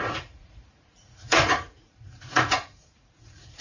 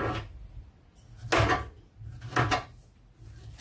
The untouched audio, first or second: second